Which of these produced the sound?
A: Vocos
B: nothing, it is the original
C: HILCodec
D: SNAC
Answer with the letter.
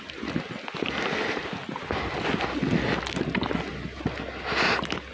B